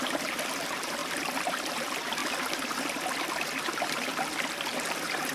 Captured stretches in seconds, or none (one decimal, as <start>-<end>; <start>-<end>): 1.0-1.7; 2.2-3.6; 4.1-4.7